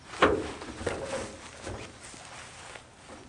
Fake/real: real